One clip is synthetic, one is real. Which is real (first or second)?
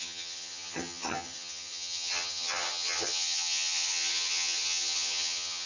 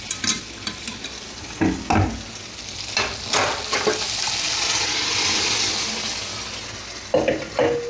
second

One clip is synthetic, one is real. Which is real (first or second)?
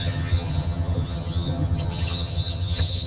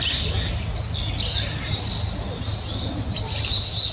second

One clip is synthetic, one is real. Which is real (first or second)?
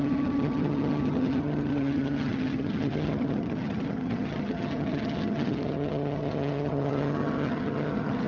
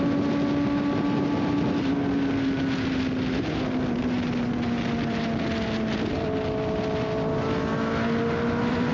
second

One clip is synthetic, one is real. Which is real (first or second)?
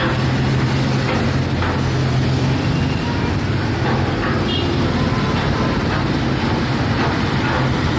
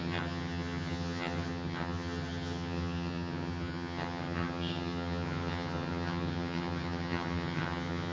first